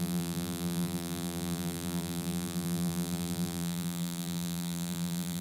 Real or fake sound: fake